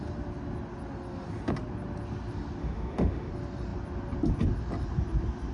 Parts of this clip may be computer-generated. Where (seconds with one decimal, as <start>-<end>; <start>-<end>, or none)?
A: 2.6-3.3